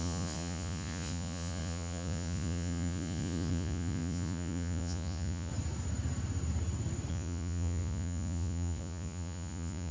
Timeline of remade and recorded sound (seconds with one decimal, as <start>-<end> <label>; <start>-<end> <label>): 0.0-5.5 remade; 5.5-7.1 recorded; 7.1-9.9 remade